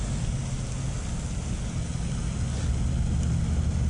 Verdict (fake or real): real